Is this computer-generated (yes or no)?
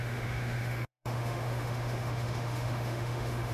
yes